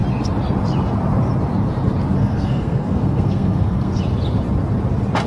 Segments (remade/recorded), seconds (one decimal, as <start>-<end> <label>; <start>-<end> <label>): 0.0-2.2 recorded; 2.2-4.0 remade; 4.0-5.3 recorded